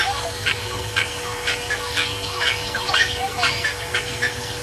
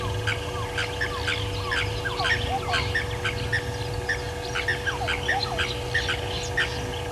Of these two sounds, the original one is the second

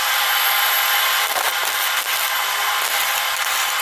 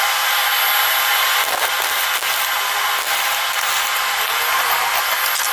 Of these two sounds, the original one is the second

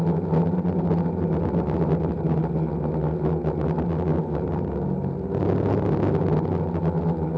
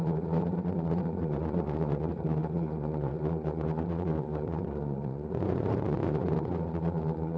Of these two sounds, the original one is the first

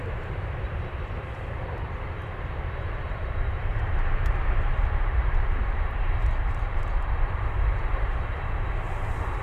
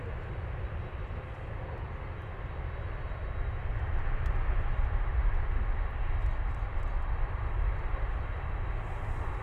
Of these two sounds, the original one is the second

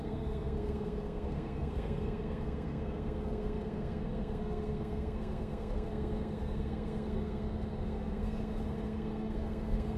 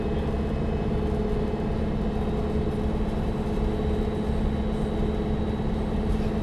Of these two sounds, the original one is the second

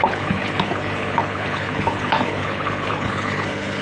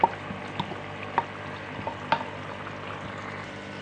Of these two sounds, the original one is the second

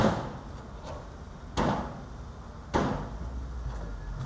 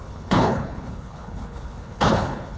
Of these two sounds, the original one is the first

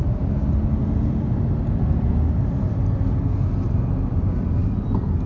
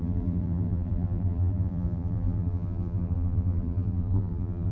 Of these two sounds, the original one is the first